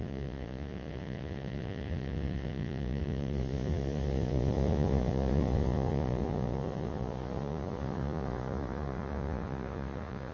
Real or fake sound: fake